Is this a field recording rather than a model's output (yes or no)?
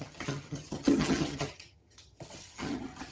no